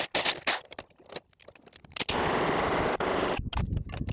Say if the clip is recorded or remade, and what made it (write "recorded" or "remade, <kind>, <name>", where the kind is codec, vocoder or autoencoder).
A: recorded